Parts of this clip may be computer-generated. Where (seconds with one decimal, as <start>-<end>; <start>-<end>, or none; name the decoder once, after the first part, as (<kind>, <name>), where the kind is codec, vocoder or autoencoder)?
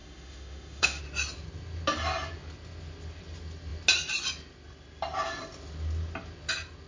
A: 0.0-1.0 (autoencoder, DAC-VAE)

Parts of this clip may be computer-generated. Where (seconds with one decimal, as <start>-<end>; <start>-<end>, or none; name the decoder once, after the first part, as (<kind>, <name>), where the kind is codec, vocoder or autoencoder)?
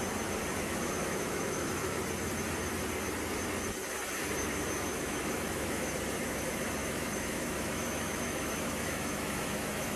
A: 0.5-2.0 (autoencoder, DAC-VAE); 4.9-5.9; 6.8-10.0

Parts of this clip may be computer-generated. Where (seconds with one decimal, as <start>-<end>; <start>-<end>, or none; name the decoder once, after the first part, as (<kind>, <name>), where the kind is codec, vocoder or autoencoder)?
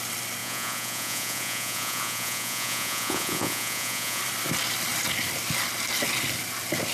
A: 0.4-4.2 (vocoder, Vocos)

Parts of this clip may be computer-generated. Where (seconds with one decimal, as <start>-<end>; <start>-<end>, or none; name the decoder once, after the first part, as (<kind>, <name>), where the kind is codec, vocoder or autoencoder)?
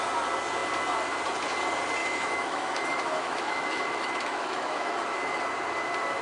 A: 2.0-5.4 (autoencoder, DAC-VAE)